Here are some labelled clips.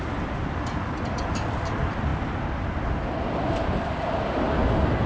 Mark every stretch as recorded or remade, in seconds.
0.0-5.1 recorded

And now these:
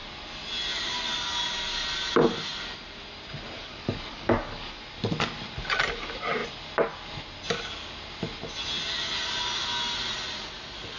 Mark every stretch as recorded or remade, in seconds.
0.0-3.6 recorded; 3.6-4.8 remade; 4.8-11.0 recorded